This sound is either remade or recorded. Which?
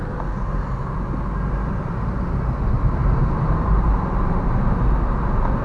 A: recorded